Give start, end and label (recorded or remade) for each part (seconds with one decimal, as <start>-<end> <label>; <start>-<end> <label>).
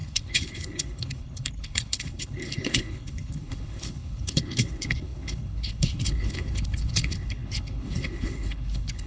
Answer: 0.0-9.1 remade